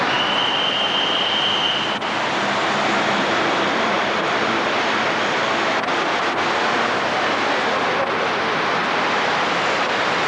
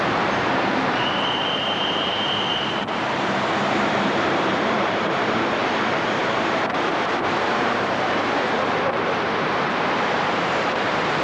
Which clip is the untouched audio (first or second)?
first